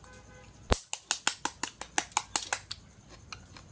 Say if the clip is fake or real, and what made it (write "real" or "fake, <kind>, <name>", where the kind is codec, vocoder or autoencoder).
real